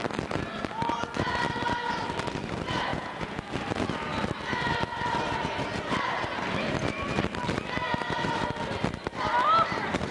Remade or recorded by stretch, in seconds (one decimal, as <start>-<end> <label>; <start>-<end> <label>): 0.0-2.9 recorded; 2.9-3.4 remade; 3.4-10.1 recorded